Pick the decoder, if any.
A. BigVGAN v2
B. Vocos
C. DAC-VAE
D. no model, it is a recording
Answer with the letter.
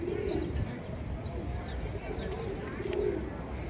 D